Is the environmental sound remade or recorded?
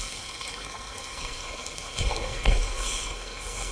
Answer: remade